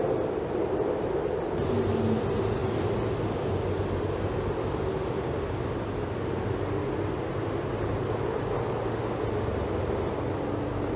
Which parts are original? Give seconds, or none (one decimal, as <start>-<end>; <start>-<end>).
0.0-11.0